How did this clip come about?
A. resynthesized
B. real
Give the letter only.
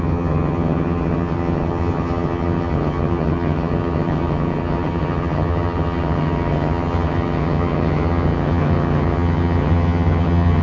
A